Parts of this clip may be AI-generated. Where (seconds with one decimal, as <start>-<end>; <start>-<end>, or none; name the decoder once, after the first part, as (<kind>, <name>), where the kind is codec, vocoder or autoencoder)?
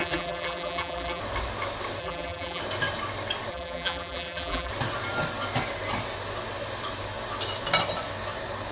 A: 0.0-1.2 (vocoder, BigVGAN v2); 2.0-2.6; 3.5-4.7